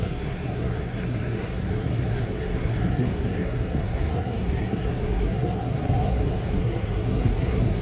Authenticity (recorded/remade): remade